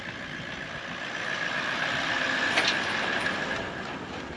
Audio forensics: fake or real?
real